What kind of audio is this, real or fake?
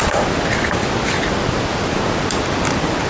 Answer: real